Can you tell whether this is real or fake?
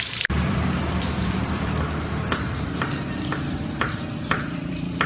fake